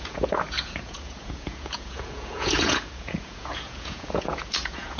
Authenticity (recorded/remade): remade